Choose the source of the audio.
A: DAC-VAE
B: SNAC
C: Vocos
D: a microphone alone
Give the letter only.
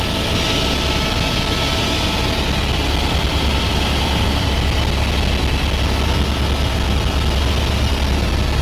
D